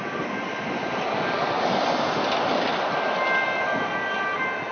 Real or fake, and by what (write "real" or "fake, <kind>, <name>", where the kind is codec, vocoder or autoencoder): real